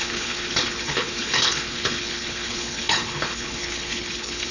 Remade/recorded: remade